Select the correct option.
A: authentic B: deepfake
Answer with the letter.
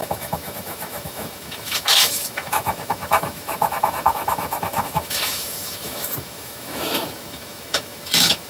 B